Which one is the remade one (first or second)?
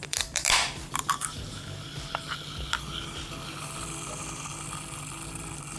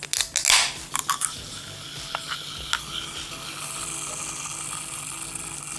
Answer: first